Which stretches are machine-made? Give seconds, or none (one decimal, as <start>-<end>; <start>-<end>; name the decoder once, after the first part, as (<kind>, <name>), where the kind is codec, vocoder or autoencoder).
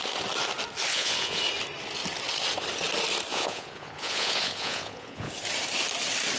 0.9-1.4 (vocoder, Vocos); 3.3-5.3